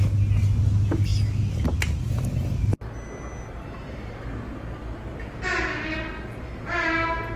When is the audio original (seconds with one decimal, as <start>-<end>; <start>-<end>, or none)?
0.0-7.4